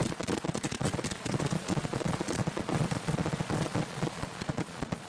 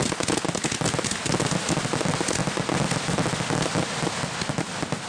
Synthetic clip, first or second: first